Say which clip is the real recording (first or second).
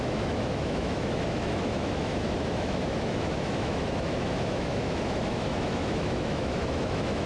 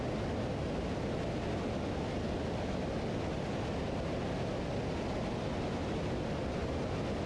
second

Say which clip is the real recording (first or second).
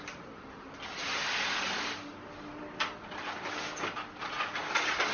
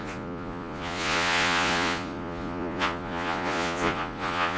first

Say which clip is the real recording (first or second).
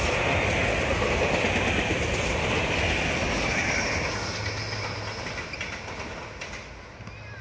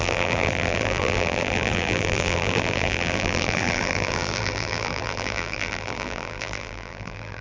first